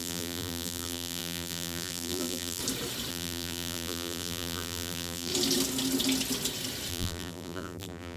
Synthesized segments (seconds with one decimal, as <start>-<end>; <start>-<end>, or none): 0.0-2.6; 3.1-5.3; 6.9-8.2